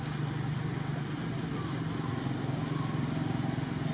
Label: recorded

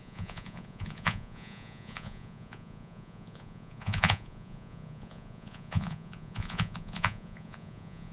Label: remade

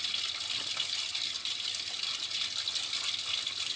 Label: recorded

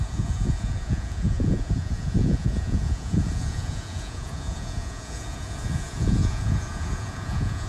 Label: remade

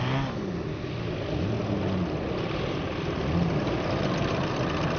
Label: recorded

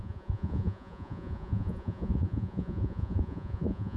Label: remade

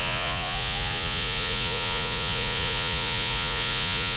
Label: remade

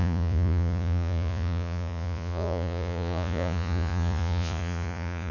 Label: remade